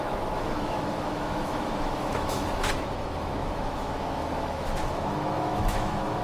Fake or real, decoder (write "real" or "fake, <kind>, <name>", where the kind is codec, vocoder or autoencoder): fake, autoencoder, DAC-VAE